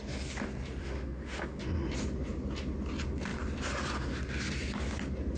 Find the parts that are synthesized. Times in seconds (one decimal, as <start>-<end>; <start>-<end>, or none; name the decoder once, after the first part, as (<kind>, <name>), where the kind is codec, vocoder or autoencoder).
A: 0.8-1.6 (autoencoder, DAC-VAE)